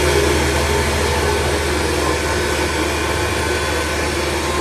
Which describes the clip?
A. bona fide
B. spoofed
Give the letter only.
A